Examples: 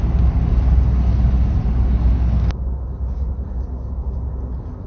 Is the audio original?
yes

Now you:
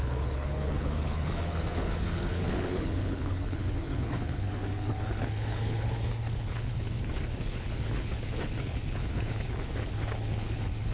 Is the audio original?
no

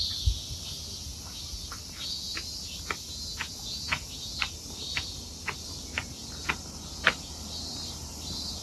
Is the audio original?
yes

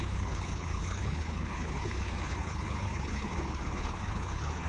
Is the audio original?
no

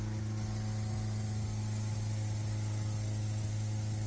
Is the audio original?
yes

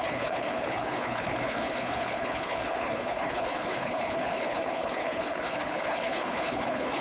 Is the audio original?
no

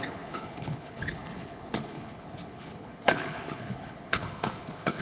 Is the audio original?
no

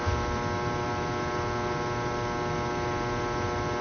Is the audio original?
yes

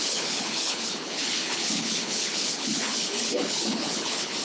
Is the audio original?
no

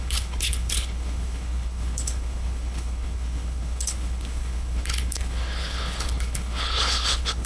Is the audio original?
no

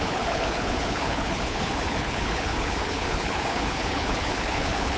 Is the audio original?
no